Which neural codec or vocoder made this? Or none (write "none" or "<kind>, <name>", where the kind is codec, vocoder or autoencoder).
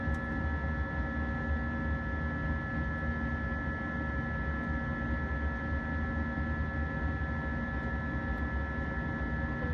none